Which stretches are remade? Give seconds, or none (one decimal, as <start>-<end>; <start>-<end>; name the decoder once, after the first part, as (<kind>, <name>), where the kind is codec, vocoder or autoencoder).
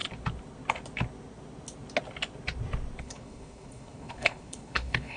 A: 3.0-5.2 (codec, HILCodec)